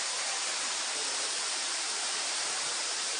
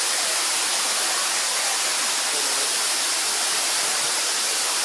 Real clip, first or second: second